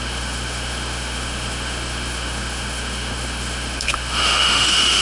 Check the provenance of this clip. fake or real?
fake